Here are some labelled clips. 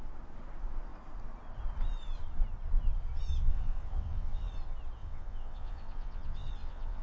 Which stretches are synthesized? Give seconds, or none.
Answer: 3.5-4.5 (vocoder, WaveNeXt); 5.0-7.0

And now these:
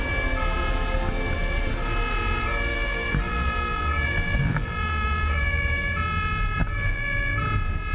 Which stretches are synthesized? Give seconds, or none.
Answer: 2.7-5.9 (vocoder, BigVGAN v2); 6.6-7.4

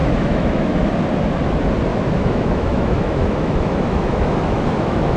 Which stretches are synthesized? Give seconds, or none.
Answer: 0.0-0.9 (autoencoder, DAC-VAE); 1.9-5.2

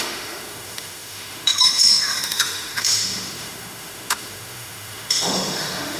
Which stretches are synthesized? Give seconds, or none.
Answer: 0.0-6.0 (autoencoder, DAC-VAE)

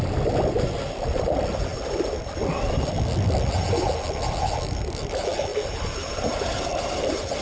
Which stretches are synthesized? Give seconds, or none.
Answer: 0.0-7.4 (vocoder, BigVGAN v2)

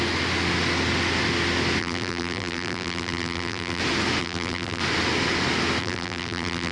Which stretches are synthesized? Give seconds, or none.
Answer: 1.8-3.8 (vocoder, BigVGAN v2); 4.2-4.8; 5.8-6.7